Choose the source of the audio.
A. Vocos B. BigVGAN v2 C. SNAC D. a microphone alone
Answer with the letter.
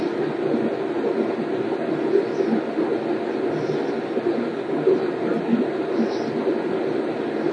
D